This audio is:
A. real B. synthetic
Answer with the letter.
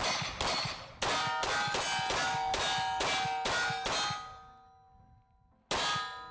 A